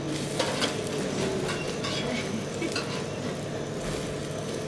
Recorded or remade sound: recorded